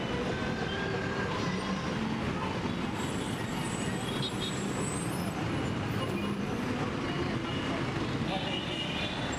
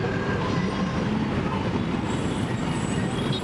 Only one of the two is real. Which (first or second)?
first